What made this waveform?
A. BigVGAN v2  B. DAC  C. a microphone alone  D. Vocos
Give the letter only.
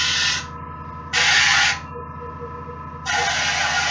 C